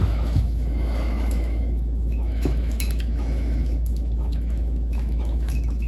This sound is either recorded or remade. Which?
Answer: remade